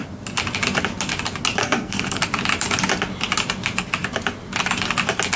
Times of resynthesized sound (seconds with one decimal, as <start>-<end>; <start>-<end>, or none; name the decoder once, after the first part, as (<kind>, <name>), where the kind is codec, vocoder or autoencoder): 1.6-2.2 (codec, SNAC)